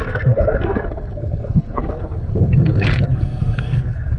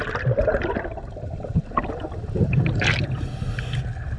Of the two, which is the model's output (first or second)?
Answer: first